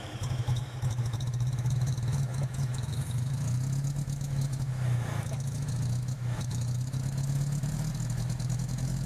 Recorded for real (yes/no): no